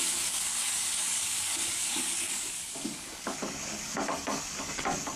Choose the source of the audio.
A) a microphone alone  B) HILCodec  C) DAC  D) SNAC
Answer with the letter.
C